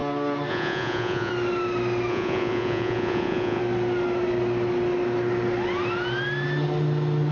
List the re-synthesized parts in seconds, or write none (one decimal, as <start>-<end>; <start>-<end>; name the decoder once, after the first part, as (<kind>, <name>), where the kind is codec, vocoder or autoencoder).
0.5-1.3 (vocoder, Vocos); 2.1-3.6